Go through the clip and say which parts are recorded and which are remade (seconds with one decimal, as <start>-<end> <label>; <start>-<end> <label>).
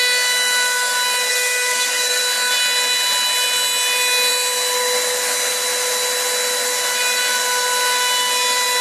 0.0-1.3 recorded; 1.3-2.2 remade; 2.2-8.8 recorded